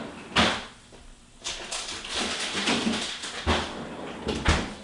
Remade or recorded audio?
recorded